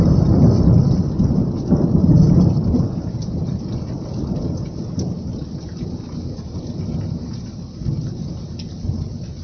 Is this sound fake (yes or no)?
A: no